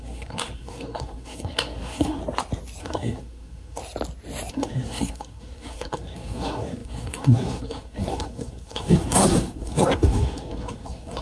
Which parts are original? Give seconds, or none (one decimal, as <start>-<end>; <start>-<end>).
2.2-2.8; 3.8-4.5